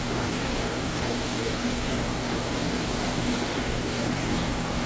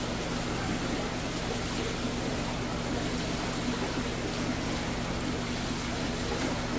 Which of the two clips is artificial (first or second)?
first